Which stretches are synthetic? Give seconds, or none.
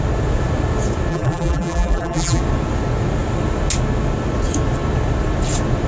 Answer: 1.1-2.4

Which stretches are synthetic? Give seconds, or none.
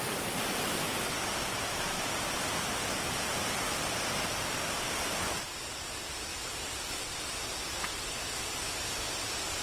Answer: none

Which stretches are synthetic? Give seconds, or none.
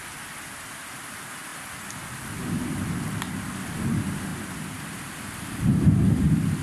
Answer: 4.3-4.9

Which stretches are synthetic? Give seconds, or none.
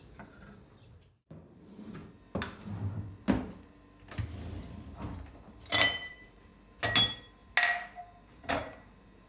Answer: 0.0-2.0; 6.1-6.5; 8.0-9.3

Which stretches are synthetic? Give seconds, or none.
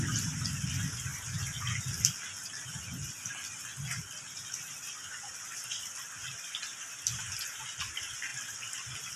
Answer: none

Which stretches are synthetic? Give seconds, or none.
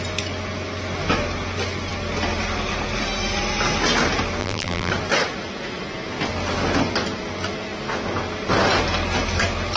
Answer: 4.4-4.9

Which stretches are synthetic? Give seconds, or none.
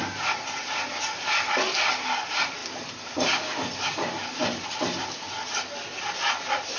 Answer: 2.6-5.2